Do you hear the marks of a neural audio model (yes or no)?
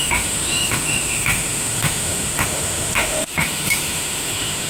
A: yes